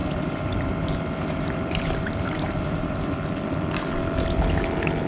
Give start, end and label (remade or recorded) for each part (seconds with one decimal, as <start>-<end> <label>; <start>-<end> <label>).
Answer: 0.0-3.1 remade; 3.1-5.1 recorded